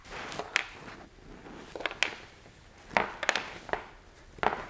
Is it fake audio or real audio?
real